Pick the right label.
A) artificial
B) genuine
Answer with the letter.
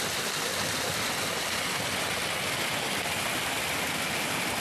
B